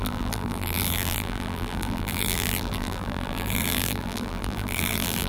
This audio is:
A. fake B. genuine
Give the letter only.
A